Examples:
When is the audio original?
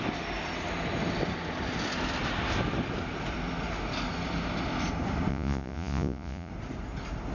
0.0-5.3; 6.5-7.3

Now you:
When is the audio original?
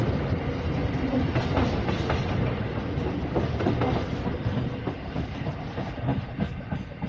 0.0-6.1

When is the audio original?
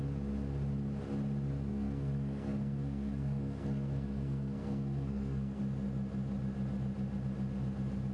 0.0-1.7; 5.6-8.1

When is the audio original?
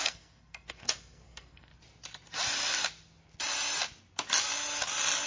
1.7-5.3